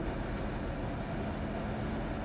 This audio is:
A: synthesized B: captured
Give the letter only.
B